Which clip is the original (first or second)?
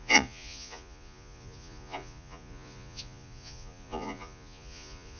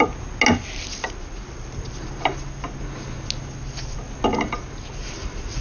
second